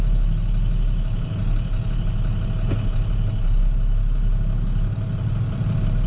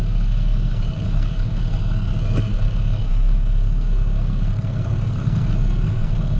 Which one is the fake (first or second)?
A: second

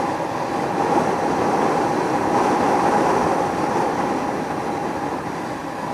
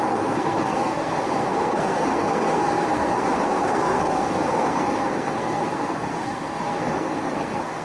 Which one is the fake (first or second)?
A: second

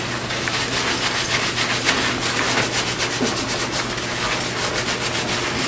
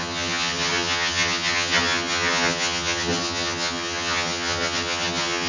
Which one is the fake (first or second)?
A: second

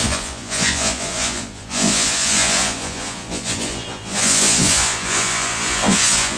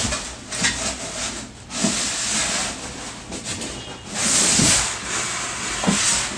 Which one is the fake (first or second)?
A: first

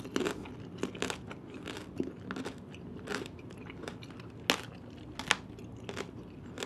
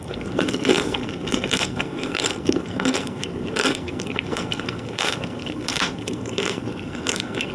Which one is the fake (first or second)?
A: second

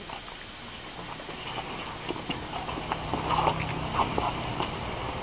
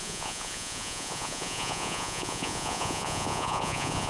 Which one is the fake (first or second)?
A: second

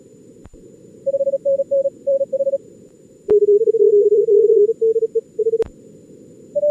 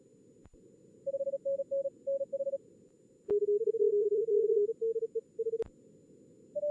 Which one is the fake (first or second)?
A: first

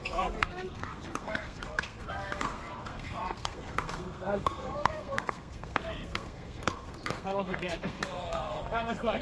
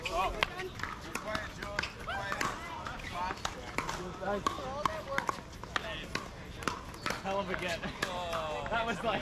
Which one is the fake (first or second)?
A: first